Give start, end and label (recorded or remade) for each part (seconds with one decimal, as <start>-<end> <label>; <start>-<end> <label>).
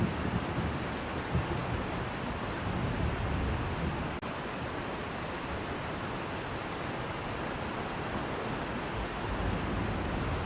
0.0-10.5 recorded